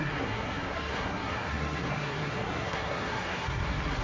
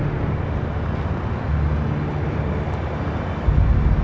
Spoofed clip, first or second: first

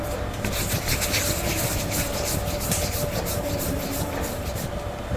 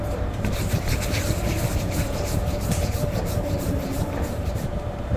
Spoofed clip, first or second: second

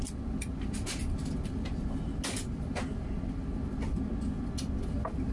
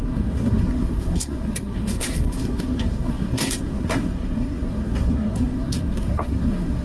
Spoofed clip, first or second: second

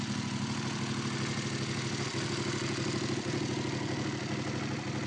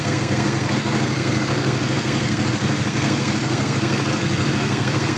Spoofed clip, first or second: second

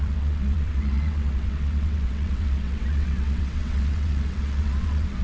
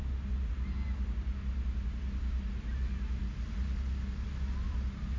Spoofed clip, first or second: first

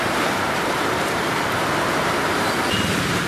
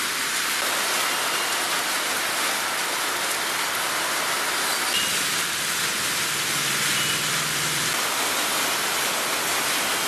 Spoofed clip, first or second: first